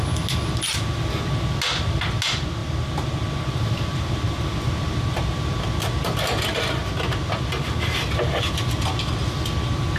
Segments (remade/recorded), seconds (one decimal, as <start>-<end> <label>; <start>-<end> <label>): 0.0-10.0 recorded